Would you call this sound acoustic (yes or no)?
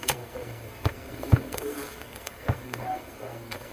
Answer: no